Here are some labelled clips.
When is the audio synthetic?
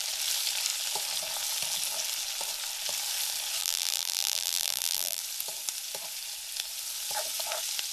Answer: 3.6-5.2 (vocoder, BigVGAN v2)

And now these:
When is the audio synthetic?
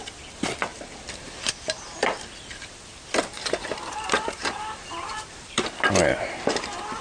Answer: 0.7-2.2 (vocoder, BigVGAN v2); 3.3-5.7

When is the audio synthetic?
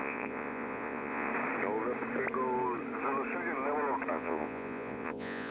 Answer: 0.0-1.3 (vocoder, Vocos); 4.1-5.5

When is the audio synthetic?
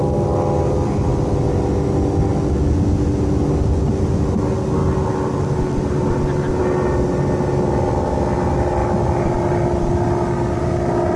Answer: 4.8-6.6 (vocoder, BigVGAN v2); 8.8-10.6